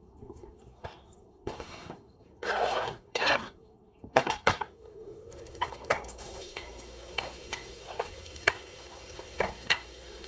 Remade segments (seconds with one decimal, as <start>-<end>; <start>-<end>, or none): 0.0-10.3